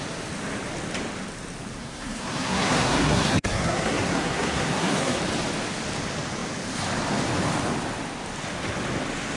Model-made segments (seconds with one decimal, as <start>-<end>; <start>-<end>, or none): 1.8-5.2

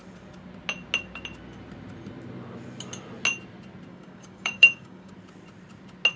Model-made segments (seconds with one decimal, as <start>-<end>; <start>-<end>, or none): 3.9-5.1

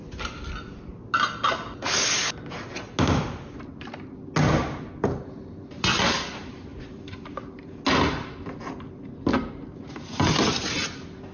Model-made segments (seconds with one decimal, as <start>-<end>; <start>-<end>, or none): none

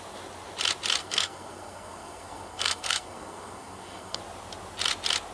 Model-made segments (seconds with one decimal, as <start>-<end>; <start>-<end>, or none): 1.0-4.2

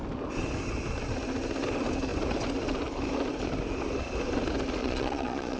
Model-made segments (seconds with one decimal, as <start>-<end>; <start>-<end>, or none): 4.8-5.6

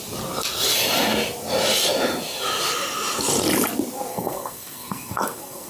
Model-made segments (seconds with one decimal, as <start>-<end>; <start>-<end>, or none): 4.1-5.7

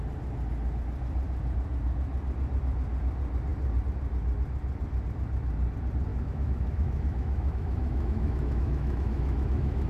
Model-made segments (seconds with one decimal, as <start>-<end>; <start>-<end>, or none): 6.1-9.9

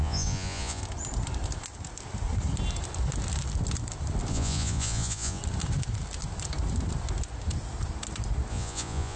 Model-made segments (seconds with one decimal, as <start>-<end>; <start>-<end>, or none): 0.0-0.8; 4.3-5.4; 8.5-9.2